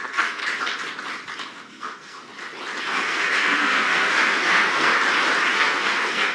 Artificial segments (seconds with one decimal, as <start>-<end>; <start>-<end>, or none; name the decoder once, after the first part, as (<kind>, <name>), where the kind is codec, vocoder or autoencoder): 0.0-0.4 (codec, SNAC); 1.4-2.2; 2.8-4.9; 5.5-6.3